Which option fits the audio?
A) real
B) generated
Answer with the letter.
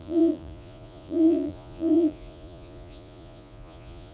B